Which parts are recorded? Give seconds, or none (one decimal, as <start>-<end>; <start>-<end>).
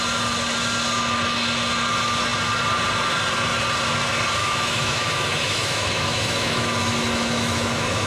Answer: 0.0-4.4